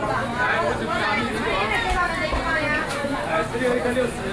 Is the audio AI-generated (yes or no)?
no